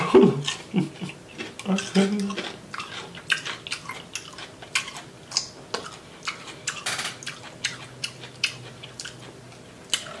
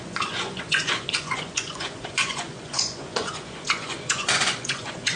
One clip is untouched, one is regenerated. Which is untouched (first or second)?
first